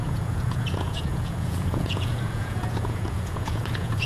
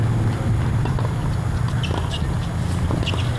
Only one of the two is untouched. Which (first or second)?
second